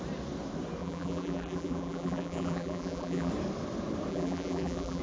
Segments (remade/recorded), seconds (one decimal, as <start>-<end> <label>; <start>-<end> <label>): 0.0-0.8 recorded; 0.8-3.3 remade; 3.3-4.1 recorded; 4.1-5.0 remade